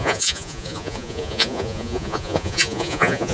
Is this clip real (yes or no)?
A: no